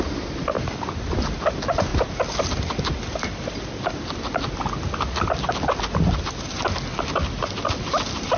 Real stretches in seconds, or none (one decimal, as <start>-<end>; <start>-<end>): 0.0-8.4